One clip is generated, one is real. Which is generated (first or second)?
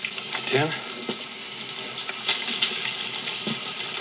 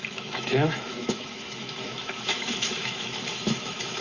second